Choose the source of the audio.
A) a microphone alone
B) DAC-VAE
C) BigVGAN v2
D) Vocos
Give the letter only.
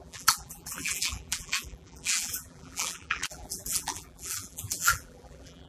C